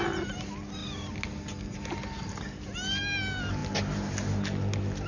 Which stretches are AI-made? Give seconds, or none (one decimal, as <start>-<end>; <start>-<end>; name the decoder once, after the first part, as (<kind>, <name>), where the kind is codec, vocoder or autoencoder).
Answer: none